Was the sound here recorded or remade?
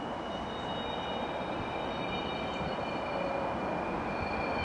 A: recorded